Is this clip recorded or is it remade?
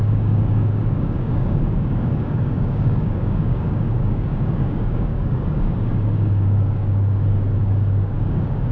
remade